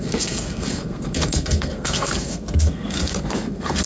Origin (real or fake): fake